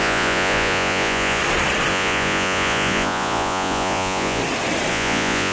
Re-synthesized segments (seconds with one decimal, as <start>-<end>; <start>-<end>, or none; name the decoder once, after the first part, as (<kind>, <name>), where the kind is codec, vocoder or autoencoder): 0.0-1.4 (vocoder, Vocos); 1.9-4.4; 4.9-5.5